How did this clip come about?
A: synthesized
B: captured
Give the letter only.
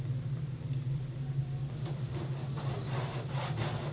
B